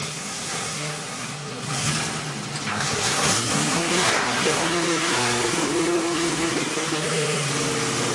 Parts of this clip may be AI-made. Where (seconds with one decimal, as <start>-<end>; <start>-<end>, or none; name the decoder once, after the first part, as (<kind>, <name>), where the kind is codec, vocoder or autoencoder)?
0.0-1.9 (codec, SNAC); 2.7-7.5